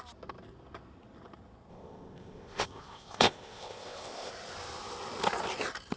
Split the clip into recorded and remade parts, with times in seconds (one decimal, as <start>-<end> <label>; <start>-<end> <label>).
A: 0.0-1.7 recorded; 1.7-4.3 remade; 4.3-6.0 recorded

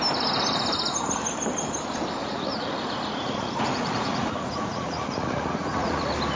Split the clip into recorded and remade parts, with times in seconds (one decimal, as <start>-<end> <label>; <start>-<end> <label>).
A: 0.0-2.2 recorded; 2.2-6.0 remade; 6.0-6.4 recorded

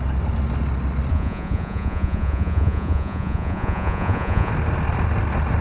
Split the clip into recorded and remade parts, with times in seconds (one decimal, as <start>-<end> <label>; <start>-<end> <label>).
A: 0.0-1.1 recorded; 1.1-4.5 remade; 4.5-5.6 recorded

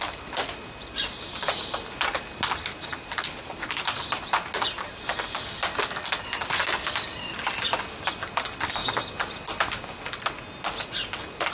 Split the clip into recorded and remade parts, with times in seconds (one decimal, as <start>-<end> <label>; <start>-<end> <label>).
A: 0.0-2.9 recorded; 2.9-4.9 remade; 4.9-11.5 recorded